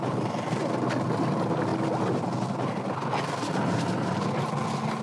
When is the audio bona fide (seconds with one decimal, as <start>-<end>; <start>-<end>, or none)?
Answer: 0.0-5.0